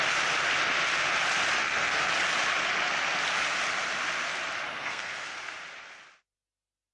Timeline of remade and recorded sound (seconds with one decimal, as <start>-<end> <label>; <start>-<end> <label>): 0.0-1.6 recorded; 1.6-2.1 remade; 2.1-4.7 recorded; 4.7-5.5 remade; 5.5-6.9 recorded